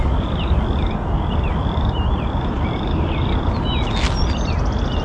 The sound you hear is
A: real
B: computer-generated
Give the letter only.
A